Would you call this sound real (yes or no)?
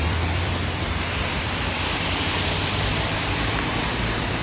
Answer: no